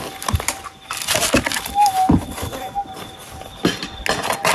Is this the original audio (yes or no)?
yes